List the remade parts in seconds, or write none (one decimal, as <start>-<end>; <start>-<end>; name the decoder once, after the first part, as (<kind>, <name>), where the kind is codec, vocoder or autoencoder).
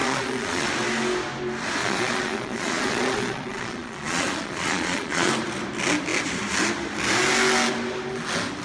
0.0-0.7 (vocoder, Vocos); 1.8-5.3